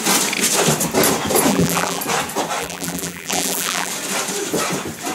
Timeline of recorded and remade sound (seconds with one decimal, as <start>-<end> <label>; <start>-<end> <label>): 0.0-1.5 recorded; 1.5-2.0 remade; 2.0-2.6 recorded; 2.6-3.9 remade; 3.9-5.1 recorded